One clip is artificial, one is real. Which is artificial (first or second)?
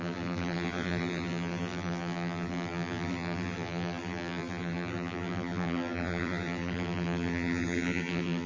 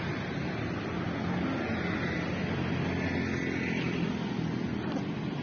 first